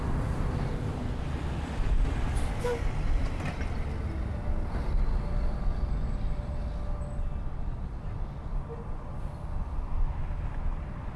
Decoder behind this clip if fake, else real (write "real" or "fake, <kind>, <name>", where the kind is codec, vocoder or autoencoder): real